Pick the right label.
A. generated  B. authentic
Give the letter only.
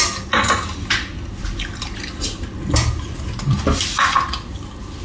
B